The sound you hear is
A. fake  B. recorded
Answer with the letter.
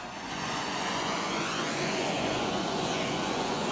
A